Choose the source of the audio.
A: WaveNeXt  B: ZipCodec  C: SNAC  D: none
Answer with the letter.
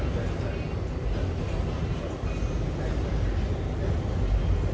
D